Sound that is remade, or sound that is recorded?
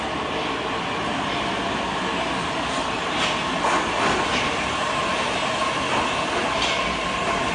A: recorded